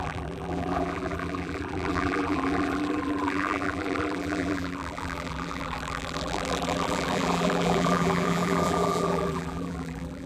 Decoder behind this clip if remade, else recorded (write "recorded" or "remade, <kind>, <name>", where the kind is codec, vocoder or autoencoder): remade, vocoder, BigVGAN v2